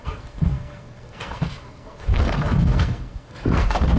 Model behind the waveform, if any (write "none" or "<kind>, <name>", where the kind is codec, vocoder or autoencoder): codec, SNAC